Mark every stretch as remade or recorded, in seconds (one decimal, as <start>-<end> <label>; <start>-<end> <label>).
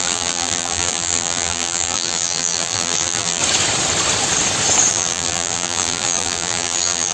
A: 0.0-3.4 remade; 3.4-4.9 recorded; 4.9-7.1 remade